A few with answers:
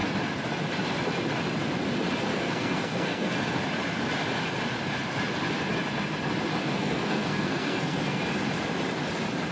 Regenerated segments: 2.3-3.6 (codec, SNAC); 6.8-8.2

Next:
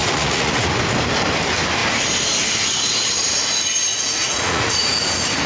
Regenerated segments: 0.0-0.7 (vocoder, Vocos); 3.9-5.1

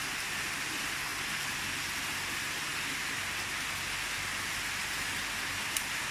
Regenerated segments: none